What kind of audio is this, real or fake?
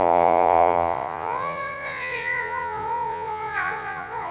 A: fake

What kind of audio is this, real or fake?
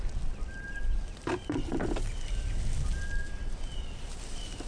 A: real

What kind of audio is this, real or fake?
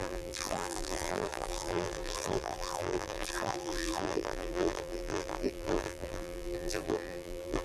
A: fake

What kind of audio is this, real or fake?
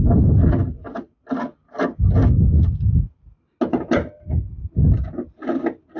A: real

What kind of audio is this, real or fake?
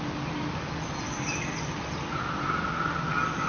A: real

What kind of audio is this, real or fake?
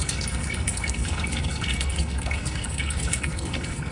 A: fake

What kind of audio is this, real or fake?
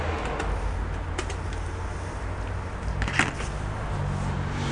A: real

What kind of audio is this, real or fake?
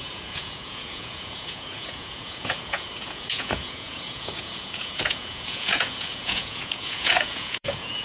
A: fake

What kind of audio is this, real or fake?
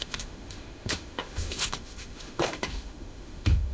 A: fake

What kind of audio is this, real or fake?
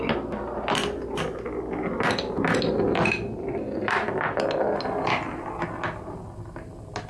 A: real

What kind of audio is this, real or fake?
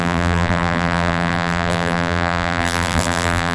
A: fake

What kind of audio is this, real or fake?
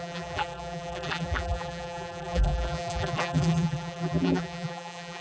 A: fake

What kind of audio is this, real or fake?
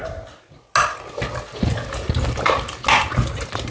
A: real